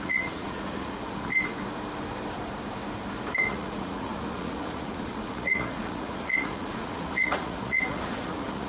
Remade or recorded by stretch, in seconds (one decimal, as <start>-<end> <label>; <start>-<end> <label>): 0.0-1.3 remade; 1.3-3.5 recorded; 3.5-8.7 remade